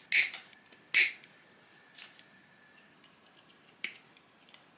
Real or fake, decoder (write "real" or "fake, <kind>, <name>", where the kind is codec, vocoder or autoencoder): real